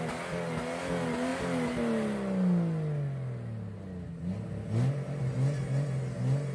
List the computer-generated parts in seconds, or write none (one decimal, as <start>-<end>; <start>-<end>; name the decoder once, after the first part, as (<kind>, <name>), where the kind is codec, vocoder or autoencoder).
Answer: none

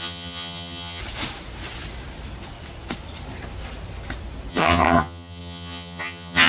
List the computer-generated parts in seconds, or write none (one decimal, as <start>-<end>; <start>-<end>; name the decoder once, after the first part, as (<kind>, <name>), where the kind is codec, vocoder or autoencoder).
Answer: 0.0-1.0 (vocoder, HiFi-GAN); 4.5-6.5

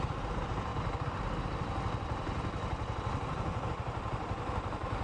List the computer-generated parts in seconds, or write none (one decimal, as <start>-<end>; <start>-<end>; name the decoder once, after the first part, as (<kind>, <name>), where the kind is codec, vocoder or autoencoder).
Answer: 0.0-0.7 (vocoder, BigVGAN v2); 3.7-5.0

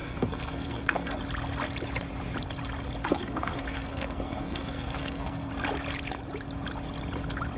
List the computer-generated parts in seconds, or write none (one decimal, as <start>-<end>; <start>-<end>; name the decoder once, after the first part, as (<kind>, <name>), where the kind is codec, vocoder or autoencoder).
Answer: 0.0-1.2 (codec, SNAC); 3.1-5.5

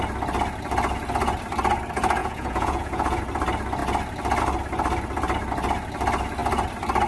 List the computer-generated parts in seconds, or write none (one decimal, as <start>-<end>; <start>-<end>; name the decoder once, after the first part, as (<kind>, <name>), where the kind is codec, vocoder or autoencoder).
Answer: 2.2-3.2 (vocoder, Vocos)

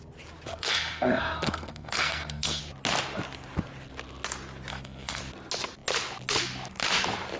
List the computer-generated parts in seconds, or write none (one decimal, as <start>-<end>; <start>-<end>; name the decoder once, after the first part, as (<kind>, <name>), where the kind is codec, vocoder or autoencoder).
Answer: 0.5-2.6 (codec, SNAC); 4.7-5.2

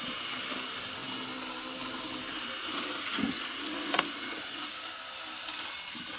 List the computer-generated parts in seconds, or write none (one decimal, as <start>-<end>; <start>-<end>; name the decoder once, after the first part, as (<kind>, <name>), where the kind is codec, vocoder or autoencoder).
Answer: 2.6-4.9 (vocoder, Vocos)

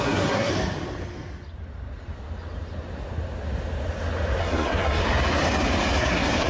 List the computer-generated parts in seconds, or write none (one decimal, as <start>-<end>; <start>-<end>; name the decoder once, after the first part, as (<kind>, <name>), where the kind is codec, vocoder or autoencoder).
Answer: 0.0-0.5 (codec, SNAC); 4.4-5.0; 6.0-6.5